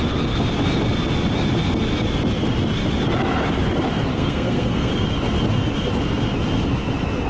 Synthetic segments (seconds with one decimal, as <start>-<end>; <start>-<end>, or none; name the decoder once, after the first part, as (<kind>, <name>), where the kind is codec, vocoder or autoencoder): 4.1-4.9 (codec, SNAC)